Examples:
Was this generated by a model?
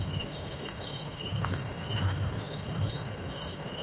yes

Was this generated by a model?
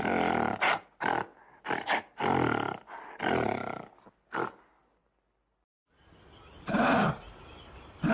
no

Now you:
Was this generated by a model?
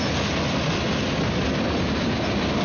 no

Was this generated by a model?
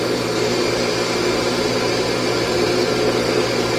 no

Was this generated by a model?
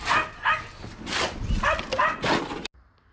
no